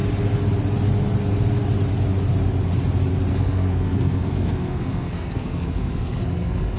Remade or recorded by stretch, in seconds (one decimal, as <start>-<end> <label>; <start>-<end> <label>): 0.0-3.3 recorded; 3.3-6.8 remade